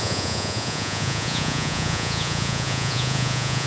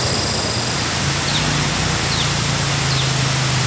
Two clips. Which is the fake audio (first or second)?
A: first